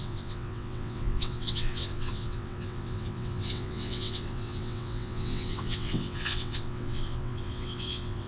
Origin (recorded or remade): remade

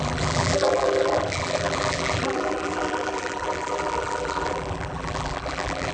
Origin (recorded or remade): remade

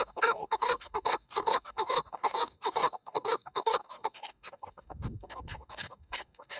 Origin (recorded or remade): remade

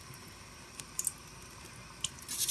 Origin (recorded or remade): recorded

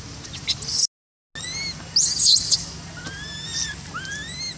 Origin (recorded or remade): recorded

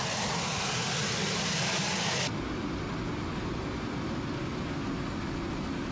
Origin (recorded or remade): recorded